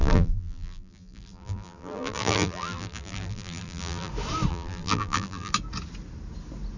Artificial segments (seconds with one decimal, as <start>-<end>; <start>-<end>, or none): 0.0-4.1; 4.5-5.5